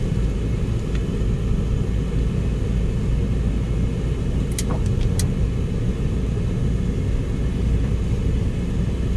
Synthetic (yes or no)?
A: no